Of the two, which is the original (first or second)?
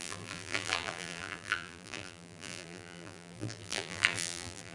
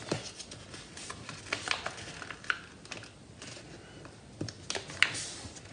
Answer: second